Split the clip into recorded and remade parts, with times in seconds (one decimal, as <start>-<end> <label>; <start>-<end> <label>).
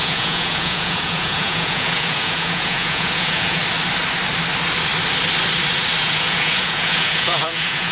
0.0-3.6 remade; 3.6-6.0 recorded; 6.0-7.9 remade